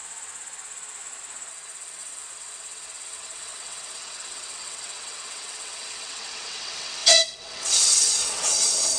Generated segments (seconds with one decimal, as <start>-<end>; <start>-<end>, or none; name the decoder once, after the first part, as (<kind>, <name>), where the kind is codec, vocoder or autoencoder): 1.5-9.0 (vocoder, WaveNeXt)